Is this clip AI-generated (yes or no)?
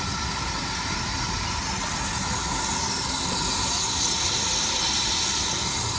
no